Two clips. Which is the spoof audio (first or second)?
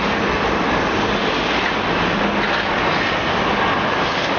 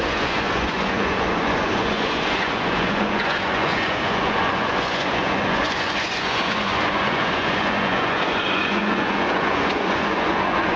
second